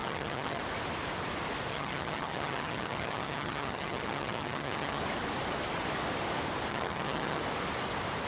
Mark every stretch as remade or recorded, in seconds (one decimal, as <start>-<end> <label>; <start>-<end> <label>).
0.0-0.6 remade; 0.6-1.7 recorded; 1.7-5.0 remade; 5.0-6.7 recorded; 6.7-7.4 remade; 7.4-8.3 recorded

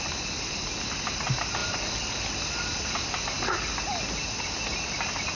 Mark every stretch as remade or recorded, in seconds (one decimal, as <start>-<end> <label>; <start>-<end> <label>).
0.0-5.3 recorded

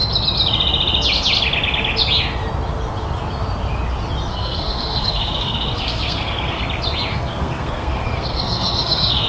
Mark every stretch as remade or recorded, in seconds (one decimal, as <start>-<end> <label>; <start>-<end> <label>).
0.0-4.3 recorded; 4.3-6.6 remade; 6.6-7.1 recorded; 7.1-9.3 remade

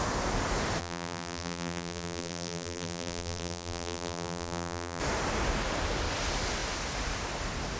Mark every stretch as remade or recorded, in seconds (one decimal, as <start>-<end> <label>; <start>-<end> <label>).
0.0-0.8 recorded; 0.8-5.0 remade; 5.0-7.8 recorded